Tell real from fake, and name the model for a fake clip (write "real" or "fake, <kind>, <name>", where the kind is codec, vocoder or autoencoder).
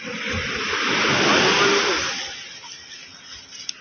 real